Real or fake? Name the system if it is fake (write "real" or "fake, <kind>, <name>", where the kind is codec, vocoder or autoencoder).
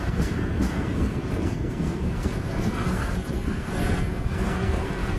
fake, codec, SNAC